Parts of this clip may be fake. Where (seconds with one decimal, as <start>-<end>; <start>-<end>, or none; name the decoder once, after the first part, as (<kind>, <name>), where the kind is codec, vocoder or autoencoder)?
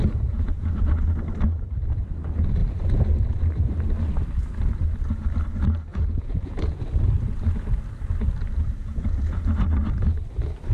0.0-0.7 (vocoder, Vocos); 5.9-6.8; 8.8-9.4